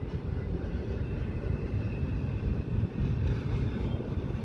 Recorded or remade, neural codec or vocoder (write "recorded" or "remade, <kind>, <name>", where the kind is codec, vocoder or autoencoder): remade, vocoder, BigVGAN v2